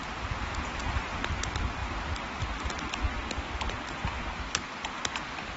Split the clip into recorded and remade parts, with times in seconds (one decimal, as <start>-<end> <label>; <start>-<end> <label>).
0.0-5.6 recorded